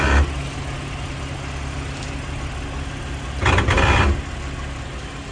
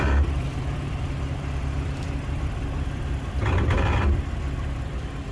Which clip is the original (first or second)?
first